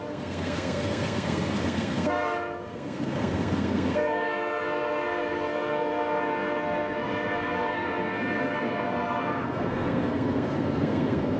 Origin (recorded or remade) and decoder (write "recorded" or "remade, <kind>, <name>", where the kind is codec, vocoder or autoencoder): remade, codec, SNAC